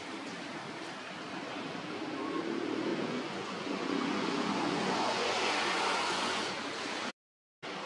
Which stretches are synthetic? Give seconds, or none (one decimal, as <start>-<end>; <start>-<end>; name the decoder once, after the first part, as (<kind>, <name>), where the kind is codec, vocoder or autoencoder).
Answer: 2.9-6.5 (vocoder, Vocos)